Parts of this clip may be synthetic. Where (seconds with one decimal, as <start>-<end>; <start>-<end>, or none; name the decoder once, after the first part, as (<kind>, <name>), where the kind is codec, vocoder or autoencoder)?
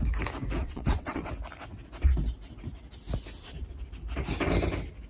0.6-1.3 (vocoder, WaveNeXt)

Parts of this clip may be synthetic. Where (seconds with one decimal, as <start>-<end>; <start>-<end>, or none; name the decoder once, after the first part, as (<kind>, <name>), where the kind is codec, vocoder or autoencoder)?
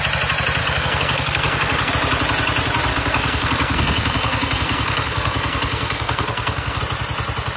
0.6-1.9 (codec, SNAC); 2.9-6.8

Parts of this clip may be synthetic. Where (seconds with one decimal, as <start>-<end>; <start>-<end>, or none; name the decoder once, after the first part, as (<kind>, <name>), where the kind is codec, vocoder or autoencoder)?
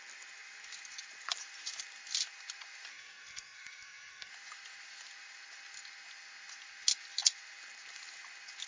2.9-4.3 (codec, SNAC)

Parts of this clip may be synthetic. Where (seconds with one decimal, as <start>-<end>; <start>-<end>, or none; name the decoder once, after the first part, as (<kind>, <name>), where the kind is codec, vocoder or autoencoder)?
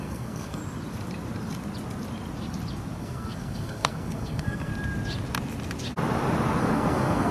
0.0-0.6 (codec, SNAC); 3.0-4.7; 6.6-7.3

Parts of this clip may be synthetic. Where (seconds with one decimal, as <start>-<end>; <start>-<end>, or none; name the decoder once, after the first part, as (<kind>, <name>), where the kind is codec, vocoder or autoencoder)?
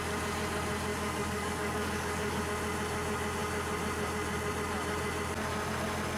0.9-2.4 (codec, DAC)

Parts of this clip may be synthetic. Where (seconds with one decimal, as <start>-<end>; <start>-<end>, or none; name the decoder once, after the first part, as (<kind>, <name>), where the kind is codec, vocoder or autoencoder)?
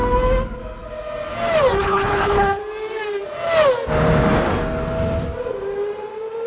1.8-2.6 (codec, HILCodec)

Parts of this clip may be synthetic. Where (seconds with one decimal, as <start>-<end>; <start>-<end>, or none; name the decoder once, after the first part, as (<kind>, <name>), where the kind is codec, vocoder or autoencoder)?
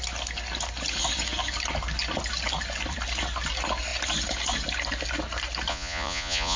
5.7-6.6 (vocoder, Vocos)